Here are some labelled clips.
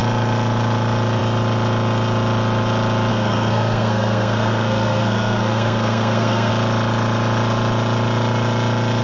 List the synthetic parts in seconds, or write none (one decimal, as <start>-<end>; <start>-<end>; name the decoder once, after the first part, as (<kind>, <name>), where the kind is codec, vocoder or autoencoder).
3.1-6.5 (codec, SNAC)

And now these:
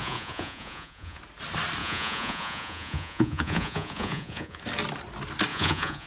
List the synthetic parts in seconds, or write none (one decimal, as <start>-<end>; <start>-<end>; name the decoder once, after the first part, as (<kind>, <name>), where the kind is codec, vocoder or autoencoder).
0.0-1.2 (vocoder, Vocos); 1.8-4.6; 5.5-6.1

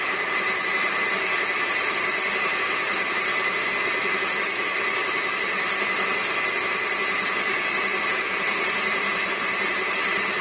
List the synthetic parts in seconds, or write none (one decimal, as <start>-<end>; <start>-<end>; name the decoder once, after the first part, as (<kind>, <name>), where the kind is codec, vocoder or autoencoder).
0.0-3.3 (vocoder, BigVGAN v2); 8.0-10.4

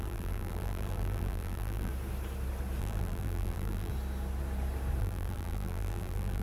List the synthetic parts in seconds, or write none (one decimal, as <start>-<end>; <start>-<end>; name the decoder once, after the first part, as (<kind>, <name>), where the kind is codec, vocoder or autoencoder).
0.0-1.9 (vocoder, BigVGAN v2); 2.8-3.9; 5.0-6.4

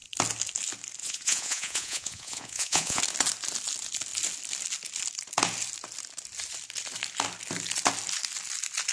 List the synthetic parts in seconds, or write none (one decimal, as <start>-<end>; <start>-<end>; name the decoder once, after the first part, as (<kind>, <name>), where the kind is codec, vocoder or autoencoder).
1.0-3.0 (vocoder, Vocos)

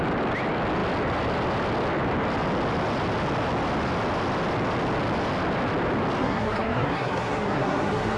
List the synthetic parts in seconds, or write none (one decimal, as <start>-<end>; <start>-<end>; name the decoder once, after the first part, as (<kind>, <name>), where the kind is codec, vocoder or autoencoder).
6.2-8.2 (codec, SNAC)

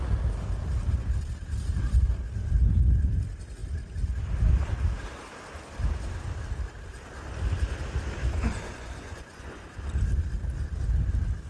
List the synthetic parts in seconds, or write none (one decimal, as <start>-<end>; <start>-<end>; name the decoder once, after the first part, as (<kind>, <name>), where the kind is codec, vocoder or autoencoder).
8.2-9.6 (vocoder, Vocos)

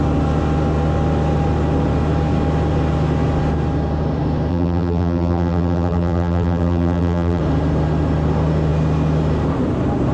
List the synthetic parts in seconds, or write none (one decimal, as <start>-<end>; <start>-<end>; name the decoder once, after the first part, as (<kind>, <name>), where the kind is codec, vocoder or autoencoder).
4.5-7.4 (vocoder, BigVGAN v2)